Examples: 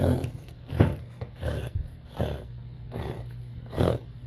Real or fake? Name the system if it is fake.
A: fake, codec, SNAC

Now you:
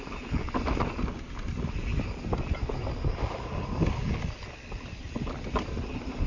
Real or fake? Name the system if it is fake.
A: real